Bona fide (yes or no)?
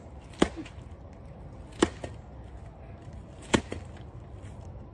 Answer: yes